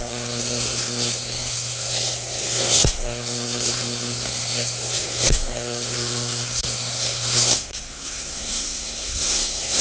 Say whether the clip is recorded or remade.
remade